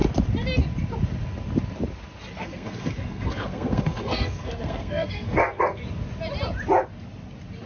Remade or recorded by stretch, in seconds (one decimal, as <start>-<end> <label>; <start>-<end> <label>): 0.0-2.4 recorded; 2.4-5.8 remade; 5.8-7.7 recorded